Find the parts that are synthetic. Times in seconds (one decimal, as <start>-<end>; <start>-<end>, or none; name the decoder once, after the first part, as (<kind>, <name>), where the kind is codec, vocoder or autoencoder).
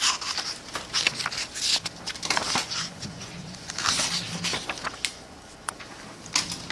2.6-3.7 (vocoder, Vocos); 5.1-5.8